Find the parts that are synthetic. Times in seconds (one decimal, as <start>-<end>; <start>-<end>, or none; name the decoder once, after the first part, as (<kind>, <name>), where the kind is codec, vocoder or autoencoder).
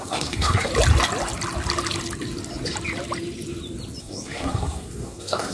0.0-0.7 (codec, SNAC); 4.0-5.5